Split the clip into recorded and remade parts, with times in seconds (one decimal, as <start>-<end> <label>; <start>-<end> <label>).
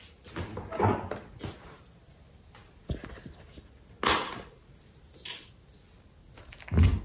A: 0.0-7.0 recorded